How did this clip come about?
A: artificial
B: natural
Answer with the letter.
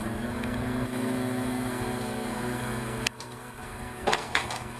A